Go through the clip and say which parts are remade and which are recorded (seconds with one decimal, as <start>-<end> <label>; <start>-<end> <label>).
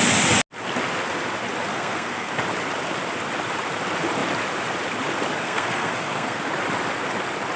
0.0-1.7 recorded; 1.7-2.3 remade; 2.3-5.4 recorded; 5.4-6.4 remade; 6.4-7.6 recorded